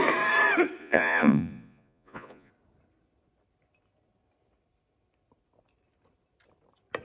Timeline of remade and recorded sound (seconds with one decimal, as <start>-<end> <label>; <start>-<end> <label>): 0.0-0.8 recorded; 0.8-2.5 remade; 2.5-7.0 recorded